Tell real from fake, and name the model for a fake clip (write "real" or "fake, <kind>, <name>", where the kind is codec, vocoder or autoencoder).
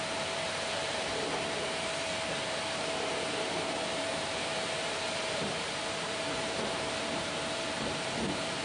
fake, vocoder, BigVGAN v2